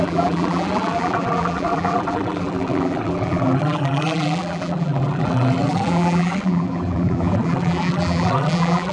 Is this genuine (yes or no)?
no